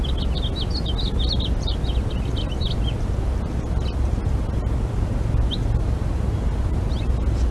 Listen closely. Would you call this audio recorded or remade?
recorded